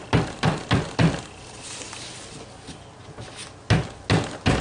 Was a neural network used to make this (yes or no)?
no